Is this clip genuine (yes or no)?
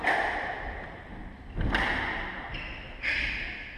no